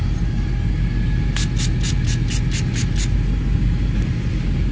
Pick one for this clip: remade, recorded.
recorded